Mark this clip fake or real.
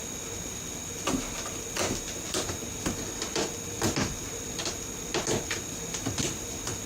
real